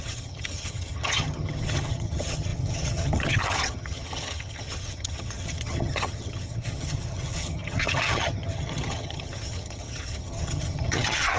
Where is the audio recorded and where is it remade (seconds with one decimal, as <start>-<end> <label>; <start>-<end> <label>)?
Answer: 0.0-11.4 remade